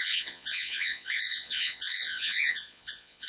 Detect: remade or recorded remade